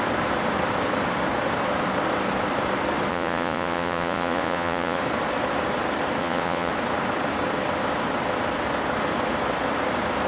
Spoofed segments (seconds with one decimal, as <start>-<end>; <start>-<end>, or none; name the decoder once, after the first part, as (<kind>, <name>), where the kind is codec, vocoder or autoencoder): 3.1-5.0 (vocoder, Vocos); 6.2-6.7